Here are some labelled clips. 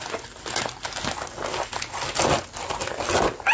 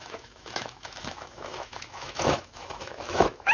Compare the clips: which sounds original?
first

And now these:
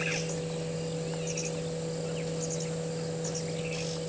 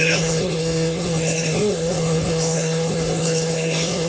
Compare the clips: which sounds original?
first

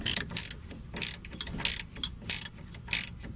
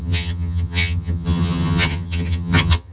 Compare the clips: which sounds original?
first